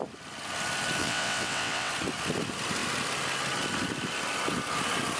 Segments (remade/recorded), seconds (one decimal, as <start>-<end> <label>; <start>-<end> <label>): 0.0-1.0 recorded; 1.0-1.9 remade; 1.9-5.2 recorded